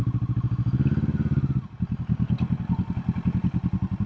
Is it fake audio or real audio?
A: real